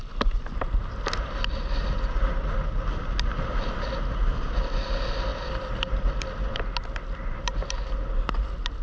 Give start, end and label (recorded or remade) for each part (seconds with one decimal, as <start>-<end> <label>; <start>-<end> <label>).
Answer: 0.0-8.8 recorded